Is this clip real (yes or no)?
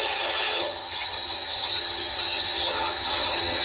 no